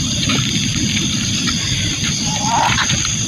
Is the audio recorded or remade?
recorded